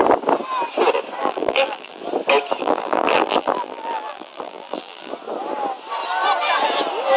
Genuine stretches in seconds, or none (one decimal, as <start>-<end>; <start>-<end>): 0.0-1.2; 2.0-2.6; 5.1-7.2